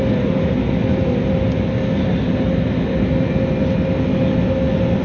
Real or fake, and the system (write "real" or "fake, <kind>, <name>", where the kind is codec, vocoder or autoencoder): real